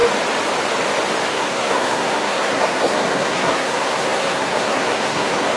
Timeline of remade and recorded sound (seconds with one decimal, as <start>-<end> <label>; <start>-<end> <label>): 0.0-1.3 recorded; 1.3-5.6 remade